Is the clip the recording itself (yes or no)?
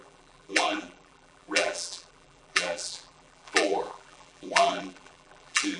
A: no